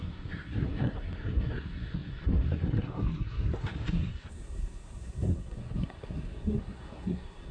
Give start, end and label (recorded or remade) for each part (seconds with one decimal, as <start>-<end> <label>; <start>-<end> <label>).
0.0-7.5 remade